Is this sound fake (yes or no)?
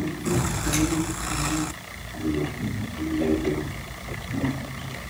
no